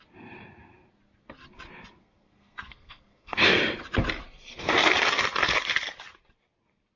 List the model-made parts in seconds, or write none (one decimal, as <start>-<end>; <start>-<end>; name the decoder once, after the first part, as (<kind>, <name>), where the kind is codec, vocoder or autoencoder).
2.0-3.6 (codec, SNAC)